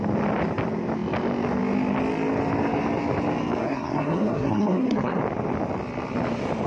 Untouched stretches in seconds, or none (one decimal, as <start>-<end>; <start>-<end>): 0.0-3.6; 5.2-6.7